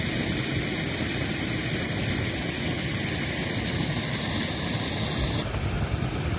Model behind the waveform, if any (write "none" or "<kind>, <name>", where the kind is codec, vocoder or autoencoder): none